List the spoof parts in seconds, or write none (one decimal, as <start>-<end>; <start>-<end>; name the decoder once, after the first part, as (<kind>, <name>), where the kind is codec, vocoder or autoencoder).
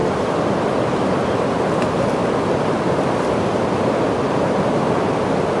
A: none